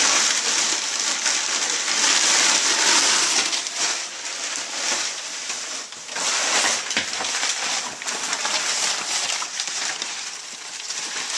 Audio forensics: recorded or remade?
remade